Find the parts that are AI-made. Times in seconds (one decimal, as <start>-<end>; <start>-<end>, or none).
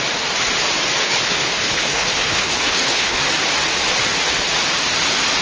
1.0-3.2